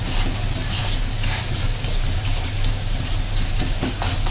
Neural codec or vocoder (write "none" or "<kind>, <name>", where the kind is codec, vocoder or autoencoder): none